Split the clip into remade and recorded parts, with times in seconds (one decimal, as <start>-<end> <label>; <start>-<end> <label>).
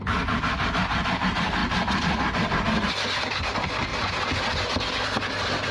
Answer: 0.0-5.7 recorded